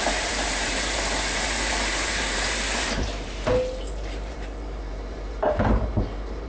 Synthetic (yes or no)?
yes